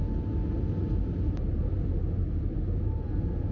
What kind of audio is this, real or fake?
real